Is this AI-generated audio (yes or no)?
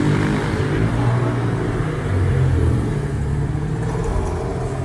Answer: no